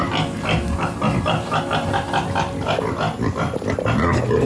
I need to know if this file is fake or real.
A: real